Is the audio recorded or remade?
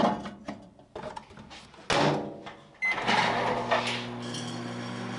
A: recorded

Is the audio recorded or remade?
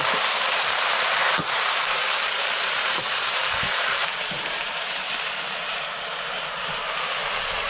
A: remade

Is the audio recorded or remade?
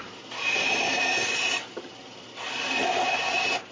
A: remade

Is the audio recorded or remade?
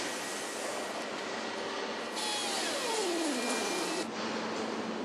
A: recorded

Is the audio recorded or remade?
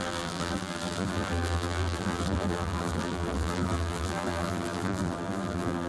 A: remade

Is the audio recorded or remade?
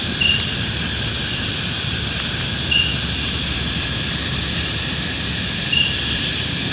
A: recorded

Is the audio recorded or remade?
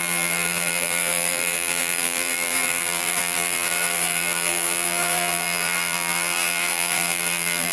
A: remade